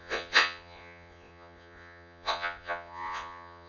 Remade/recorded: remade